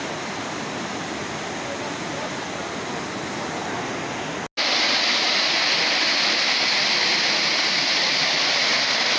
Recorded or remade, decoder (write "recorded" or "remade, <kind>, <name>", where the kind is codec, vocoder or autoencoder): recorded